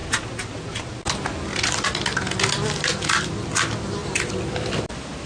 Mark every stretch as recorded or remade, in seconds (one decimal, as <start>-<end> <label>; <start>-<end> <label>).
0.0-5.3 recorded